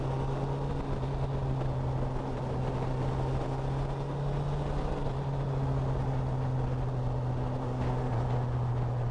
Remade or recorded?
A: recorded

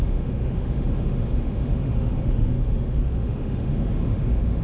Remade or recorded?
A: remade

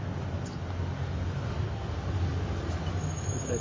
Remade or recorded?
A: recorded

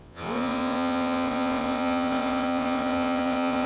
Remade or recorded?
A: remade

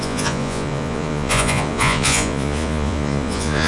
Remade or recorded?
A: remade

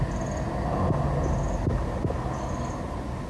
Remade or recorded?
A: recorded